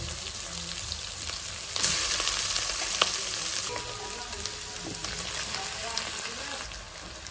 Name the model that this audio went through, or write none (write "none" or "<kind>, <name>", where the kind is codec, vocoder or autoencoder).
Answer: none